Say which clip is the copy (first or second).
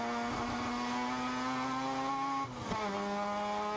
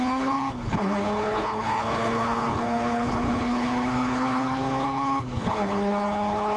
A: second